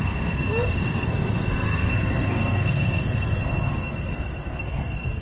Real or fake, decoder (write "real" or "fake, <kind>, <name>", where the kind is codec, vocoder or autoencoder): fake, codec, SNAC